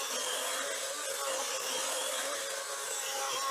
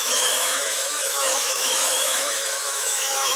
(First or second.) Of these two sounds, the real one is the first